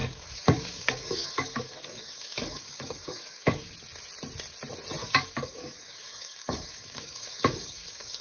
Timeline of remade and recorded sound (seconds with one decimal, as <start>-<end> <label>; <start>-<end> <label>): 0.0-3.7 remade; 3.7-5.0 recorded; 5.0-8.2 remade